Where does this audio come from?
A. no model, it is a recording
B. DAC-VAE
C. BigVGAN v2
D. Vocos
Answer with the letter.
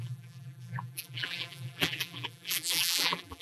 C